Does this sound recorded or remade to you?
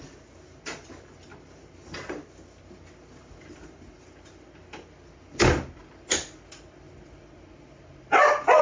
recorded